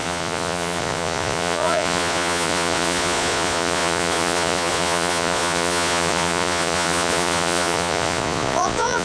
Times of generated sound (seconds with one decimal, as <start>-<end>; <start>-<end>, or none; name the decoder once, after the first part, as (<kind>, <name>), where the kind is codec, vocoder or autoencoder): 0.0-9.0 (vocoder, Vocos)